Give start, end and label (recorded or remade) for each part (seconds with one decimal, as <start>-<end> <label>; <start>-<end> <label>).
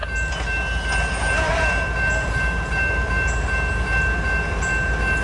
0.0-5.2 recorded